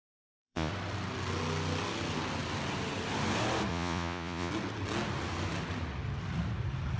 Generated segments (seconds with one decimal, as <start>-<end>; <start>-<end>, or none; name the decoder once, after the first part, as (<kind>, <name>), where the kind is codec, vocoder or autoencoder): 0.0-0.7 (vocoder, Vocos); 3.7-4.5